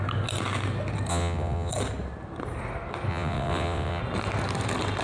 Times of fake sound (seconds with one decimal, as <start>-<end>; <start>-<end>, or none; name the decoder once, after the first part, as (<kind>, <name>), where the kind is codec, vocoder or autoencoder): 1.1-1.7 (vocoder, WaveNeXt); 3.1-4.0